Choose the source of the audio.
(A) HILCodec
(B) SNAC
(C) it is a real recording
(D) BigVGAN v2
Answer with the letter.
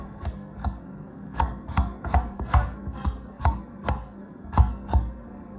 B